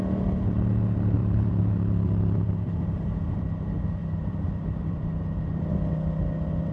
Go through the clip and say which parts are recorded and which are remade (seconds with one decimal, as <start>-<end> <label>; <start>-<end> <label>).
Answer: 0.0-1.2 recorded; 1.2-3.0 remade; 3.0-4.0 recorded; 4.0-5.1 remade; 5.1-6.7 recorded